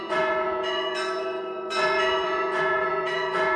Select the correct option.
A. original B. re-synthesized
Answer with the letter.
B